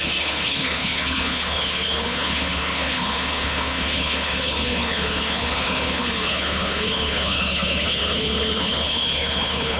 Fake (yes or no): yes